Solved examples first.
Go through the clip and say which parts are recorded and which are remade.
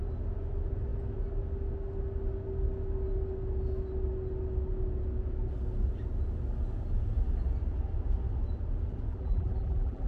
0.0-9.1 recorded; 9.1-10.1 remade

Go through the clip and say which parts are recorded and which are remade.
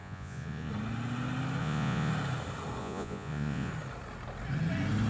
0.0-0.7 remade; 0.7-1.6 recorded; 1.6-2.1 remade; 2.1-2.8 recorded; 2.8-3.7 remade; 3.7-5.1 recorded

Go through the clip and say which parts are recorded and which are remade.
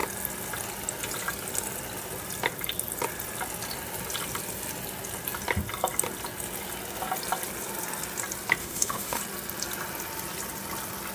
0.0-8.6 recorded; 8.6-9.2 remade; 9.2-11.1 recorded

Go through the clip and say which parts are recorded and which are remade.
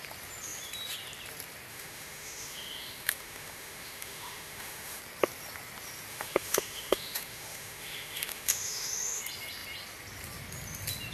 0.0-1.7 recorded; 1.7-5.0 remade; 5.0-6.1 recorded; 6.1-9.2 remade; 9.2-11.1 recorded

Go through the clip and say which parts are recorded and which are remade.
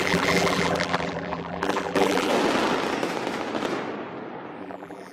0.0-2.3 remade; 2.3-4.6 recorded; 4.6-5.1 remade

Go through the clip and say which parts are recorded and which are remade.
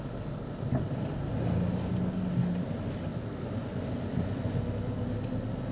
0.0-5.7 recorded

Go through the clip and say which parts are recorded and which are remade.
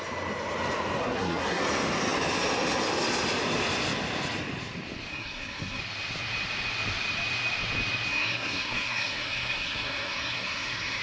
0.0-1.0 recorded; 1.0-1.6 remade; 1.6-5.1 recorded; 5.1-5.8 remade; 5.8-8.1 recorded; 8.1-11.0 remade